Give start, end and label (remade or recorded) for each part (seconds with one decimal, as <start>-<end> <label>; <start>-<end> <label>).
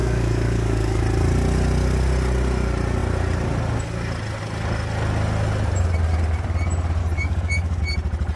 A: 0.0-1.0 remade; 1.0-7.0 recorded; 7.0-7.8 remade; 7.8-8.4 recorded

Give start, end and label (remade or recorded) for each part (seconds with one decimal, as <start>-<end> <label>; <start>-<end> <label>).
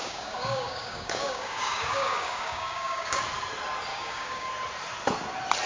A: 0.0-3.2 remade; 3.2-3.9 recorded; 3.9-4.5 remade; 4.5-5.7 recorded